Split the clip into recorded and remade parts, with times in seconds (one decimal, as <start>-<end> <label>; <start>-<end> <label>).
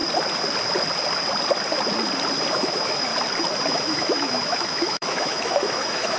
0.0-2.5 recorded; 2.5-3.1 remade; 3.1-3.7 recorded; 3.7-6.2 remade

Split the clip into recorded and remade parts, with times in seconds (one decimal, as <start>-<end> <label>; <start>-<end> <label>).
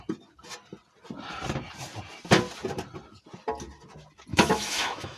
0.0-4.3 recorded; 4.3-5.2 remade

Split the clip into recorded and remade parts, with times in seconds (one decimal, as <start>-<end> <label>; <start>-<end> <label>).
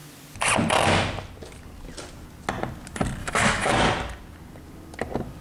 0.0-3.2 recorded; 3.2-3.7 remade; 3.7-5.4 recorded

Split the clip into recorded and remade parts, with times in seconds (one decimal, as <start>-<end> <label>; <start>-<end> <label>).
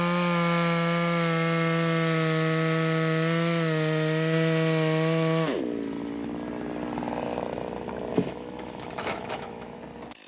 0.0-8.1 recorded; 8.1-9.8 remade; 9.8-10.3 recorded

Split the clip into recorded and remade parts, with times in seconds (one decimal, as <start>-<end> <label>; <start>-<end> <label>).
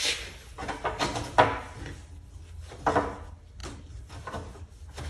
0.0-5.1 recorded